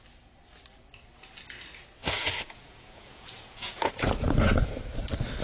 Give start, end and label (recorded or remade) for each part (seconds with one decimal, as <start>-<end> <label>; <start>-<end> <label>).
0.0-2.0 recorded; 2.0-4.7 remade; 4.7-5.4 recorded